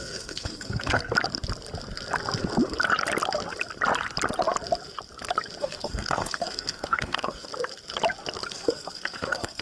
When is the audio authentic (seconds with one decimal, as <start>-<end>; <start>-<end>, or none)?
1.0-5.6; 7.5-8.5